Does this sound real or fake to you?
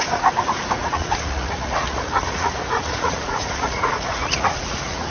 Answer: fake